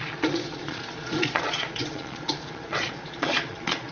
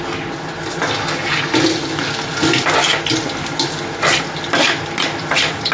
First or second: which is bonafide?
second